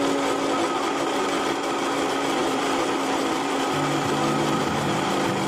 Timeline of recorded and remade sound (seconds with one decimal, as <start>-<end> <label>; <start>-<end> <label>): 0.0-2.4 recorded; 2.4-3.5 remade; 3.5-4.6 recorded; 4.6-5.1 remade; 5.1-5.5 recorded